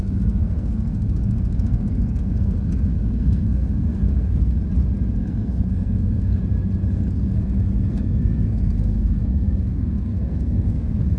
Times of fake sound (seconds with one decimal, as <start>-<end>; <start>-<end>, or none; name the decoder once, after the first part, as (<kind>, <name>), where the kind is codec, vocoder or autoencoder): 0.0-4.6 (codec, SNAC); 5.2-6.4; 6.9-11.2